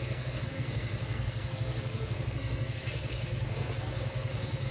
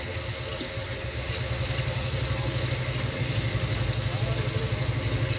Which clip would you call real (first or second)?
second